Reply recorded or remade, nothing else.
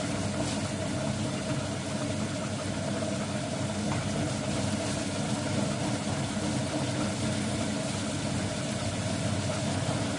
recorded